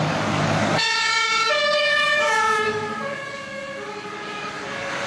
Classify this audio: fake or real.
fake